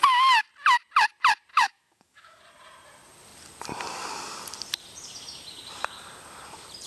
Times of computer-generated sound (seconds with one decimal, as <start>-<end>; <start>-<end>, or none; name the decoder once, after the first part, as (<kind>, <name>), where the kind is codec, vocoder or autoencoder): 1.5-2.4 (autoencoder, DAC-VAE)